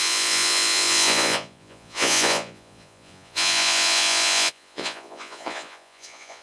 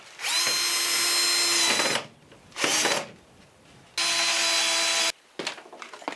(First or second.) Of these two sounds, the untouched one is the second